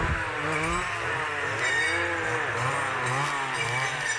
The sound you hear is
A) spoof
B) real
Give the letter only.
B